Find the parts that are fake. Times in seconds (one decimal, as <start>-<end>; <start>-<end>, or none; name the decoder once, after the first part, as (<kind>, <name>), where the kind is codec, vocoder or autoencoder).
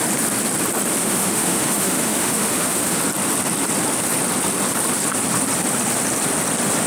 1.0-3.0 (autoencoder, DAC-VAE)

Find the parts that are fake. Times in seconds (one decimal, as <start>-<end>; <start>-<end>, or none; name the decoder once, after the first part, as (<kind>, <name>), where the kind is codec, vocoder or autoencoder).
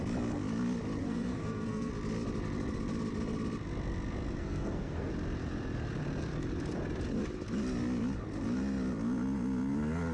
1.0-1.9 (codec, SNAC); 4.4-5.1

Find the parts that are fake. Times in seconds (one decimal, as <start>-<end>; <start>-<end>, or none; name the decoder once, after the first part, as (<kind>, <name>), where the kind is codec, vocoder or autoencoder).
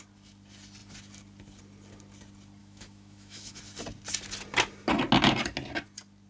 2.6-3.6 (autoencoder, DAC-VAE)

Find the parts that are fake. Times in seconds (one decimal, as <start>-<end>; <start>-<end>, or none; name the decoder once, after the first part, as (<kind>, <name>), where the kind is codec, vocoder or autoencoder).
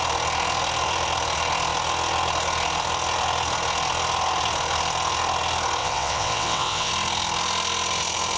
5.8-6.9 (vocoder, WaveNeXt)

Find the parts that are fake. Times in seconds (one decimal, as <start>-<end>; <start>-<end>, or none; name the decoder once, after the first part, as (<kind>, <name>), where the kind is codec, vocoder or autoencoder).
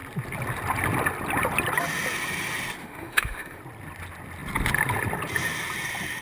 2.8-3.6 (autoencoder, DAC-VAE)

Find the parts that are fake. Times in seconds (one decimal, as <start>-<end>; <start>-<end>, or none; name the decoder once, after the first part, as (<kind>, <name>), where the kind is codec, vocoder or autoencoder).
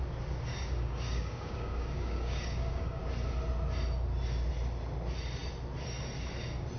0.5-3.0 (codec, DAC)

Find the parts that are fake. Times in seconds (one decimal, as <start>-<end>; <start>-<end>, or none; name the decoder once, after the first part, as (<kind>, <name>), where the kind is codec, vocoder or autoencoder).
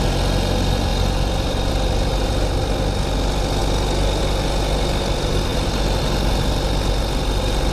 0.9-1.7 (vocoder, BigVGAN v2)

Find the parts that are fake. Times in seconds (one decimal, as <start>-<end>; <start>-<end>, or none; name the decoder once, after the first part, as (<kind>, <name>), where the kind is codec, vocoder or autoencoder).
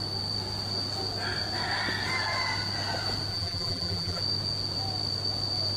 3.3-4.2 (vocoder, BigVGAN v2)